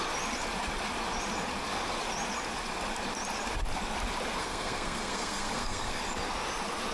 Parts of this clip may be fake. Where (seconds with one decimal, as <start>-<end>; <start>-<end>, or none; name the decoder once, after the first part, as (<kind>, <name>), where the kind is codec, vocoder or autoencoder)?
4.4-6.0 (codec, SNAC)

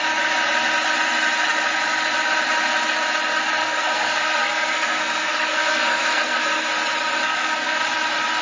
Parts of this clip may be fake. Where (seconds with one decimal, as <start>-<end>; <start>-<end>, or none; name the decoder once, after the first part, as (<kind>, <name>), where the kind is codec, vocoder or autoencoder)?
3.6-6.7 (codec, SNAC); 7.2-7.8

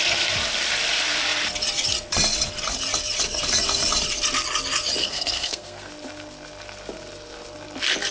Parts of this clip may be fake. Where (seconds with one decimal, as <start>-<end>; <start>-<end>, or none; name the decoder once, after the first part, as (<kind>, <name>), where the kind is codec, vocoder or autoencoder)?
5.0-5.9 (codec, SNAC)

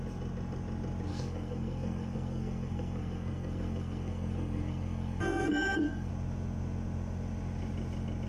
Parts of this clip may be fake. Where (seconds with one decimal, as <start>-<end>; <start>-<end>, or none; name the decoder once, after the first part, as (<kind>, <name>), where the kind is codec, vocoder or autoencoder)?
1.1-6.1 (codec, SNAC)

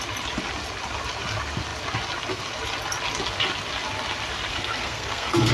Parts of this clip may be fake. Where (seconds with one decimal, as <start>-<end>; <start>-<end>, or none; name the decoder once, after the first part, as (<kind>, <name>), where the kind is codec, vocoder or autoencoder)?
4.5-5.5 (codec, SNAC)

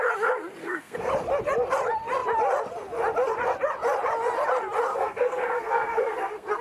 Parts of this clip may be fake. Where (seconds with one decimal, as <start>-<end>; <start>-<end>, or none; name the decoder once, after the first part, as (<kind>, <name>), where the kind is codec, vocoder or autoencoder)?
0.6-1.1 (codec, SNAC); 4.9-6.6

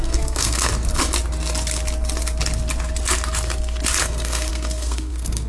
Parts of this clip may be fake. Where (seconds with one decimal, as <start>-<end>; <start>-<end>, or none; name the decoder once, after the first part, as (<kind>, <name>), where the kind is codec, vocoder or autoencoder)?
0.0-0.7 (codec, SNAC); 4.0-5.5

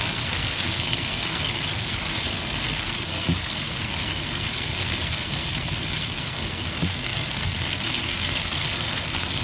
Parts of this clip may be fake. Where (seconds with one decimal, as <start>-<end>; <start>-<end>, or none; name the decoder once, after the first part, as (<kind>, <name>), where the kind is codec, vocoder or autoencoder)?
0.0-9.4 (codec, SNAC)